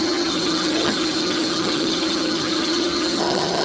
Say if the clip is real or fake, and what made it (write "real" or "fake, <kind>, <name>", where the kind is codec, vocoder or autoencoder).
fake, vocoder, HiFi-GAN